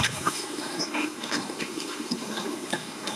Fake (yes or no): yes